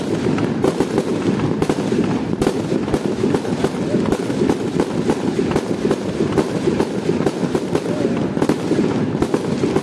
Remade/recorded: recorded